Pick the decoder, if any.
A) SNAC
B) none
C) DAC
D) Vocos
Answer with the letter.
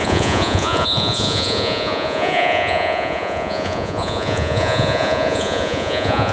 D